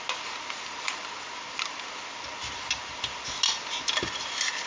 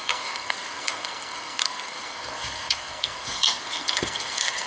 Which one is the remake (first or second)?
second